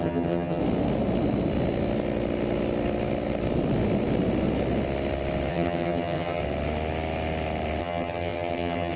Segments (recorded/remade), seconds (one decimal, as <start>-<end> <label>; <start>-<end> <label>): 0.0-0.6 remade; 0.6-5.5 recorded; 5.5-6.4 remade; 6.4-7.8 recorded; 7.8-9.0 remade